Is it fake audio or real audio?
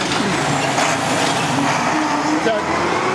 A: real